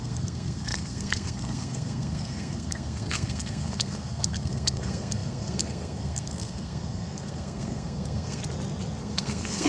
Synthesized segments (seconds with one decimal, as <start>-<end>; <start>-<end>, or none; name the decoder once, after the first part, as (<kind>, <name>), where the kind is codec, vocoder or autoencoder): 0.0-8.4 (codec, SNAC); 9.0-9.7